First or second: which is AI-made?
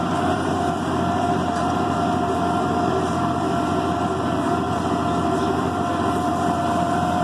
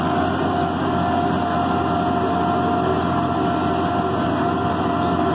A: first